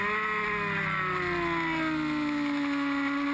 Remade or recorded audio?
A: recorded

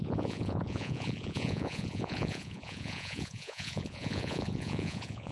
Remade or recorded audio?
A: remade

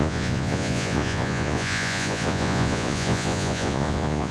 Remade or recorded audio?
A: remade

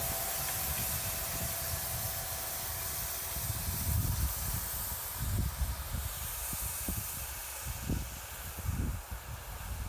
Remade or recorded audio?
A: recorded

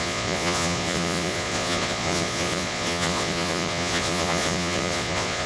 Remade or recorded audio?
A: remade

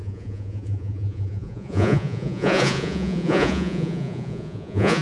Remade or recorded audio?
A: remade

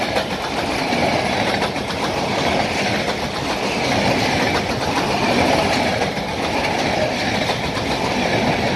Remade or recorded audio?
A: recorded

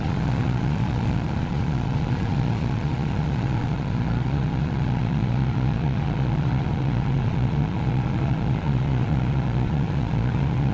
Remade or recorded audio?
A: remade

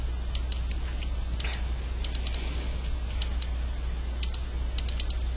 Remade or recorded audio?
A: recorded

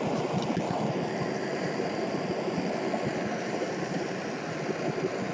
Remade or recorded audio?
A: recorded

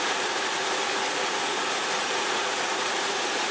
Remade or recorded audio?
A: remade